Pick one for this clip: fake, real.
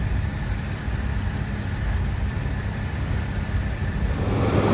real